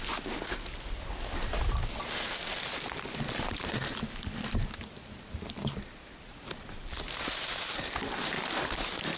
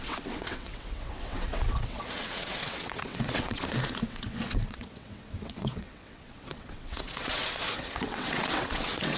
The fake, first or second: second